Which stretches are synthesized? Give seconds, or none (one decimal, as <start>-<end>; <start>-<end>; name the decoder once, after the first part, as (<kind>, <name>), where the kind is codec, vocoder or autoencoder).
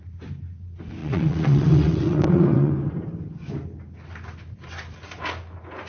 1.0-2.7 (vocoder, WaveNeXt)